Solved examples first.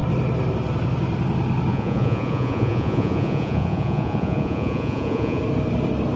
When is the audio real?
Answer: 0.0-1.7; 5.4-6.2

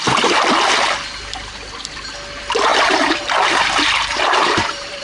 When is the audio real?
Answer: 0.0-2.7